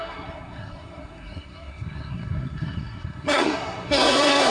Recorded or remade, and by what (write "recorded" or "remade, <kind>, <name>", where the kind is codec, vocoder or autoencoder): remade, codec, SNAC